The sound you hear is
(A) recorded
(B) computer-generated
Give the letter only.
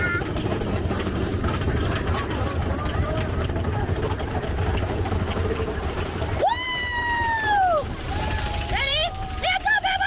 B